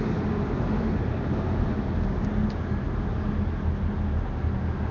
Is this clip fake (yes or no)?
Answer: no